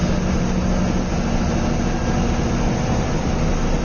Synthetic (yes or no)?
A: no